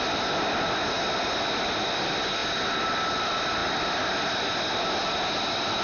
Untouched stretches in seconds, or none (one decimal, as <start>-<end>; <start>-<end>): 0.0-5.8